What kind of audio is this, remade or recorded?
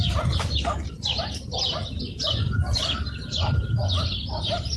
recorded